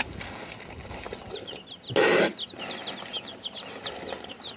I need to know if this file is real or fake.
real